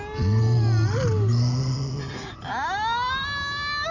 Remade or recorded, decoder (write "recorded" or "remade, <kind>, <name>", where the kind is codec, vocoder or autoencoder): recorded